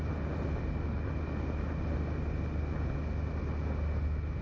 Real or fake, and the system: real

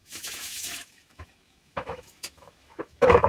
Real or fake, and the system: fake, autoencoder, DAC-VAE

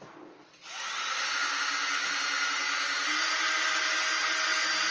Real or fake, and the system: real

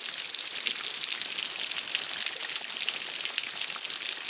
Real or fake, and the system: real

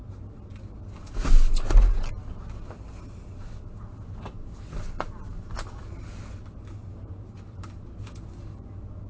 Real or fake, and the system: real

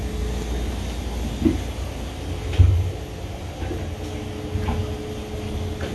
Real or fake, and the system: real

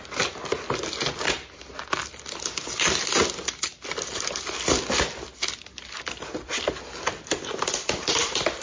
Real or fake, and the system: real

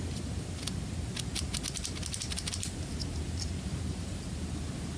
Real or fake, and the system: real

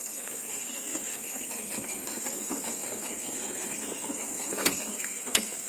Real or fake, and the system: fake, codec, SNAC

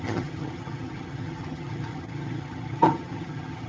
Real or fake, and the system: fake, vocoder, HiFi-GAN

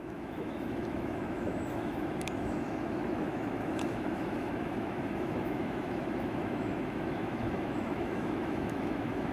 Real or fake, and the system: fake, autoencoder, DAC-VAE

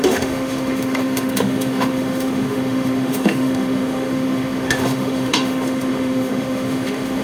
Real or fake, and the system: fake, autoencoder, DAC-VAE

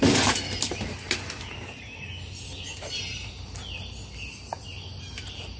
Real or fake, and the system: real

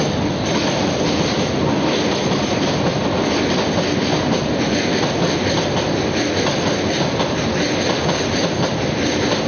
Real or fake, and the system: real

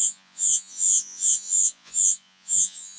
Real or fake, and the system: fake, vocoder, Vocos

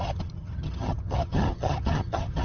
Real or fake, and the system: fake, vocoder, HiFi-GAN